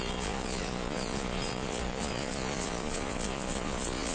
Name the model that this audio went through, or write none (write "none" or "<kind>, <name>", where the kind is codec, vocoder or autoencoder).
vocoder, Vocos